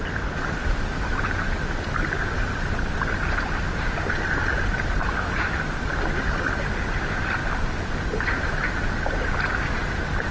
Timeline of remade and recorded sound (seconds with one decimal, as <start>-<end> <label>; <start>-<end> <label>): 0.0-10.3 recorded